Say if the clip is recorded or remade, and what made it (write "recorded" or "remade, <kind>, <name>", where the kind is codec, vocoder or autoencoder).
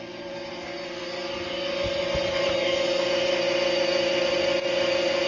remade, vocoder, BigVGAN v2